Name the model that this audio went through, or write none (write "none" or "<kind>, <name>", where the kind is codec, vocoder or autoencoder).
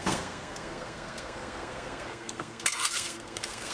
codec, SNAC